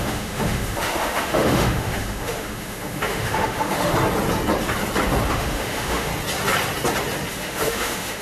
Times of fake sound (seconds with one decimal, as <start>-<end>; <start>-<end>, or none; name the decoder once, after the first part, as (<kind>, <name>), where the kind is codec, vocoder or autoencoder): 0.0-3.9 (autoencoder, DAC-VAE); 5.3-6.1; 7.3-8.2